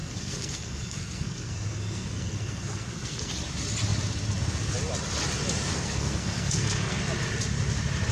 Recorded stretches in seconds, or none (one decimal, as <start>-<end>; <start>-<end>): 3.3-5.7; 7.0-8.1